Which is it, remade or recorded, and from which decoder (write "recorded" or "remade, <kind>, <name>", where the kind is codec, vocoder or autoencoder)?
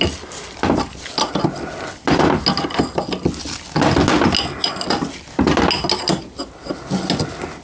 recorded